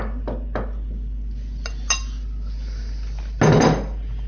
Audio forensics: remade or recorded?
recorded